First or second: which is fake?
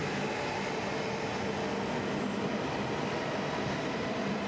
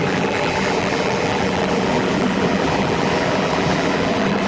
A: second